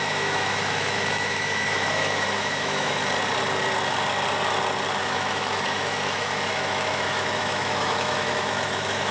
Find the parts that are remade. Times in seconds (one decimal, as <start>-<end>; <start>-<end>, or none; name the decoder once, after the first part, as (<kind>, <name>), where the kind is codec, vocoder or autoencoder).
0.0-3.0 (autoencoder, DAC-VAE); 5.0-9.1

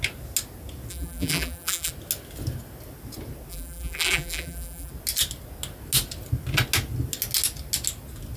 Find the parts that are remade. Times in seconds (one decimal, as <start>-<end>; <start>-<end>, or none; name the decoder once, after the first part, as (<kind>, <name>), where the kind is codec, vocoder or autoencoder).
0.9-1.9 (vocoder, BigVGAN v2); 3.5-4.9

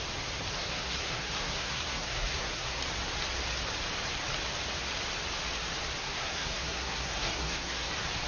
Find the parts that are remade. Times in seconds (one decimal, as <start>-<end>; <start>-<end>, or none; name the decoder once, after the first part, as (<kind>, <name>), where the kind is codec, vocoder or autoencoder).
0.6-2.8 (codec, SNAC); 6.0-7.9